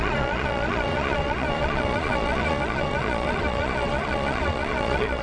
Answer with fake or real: fake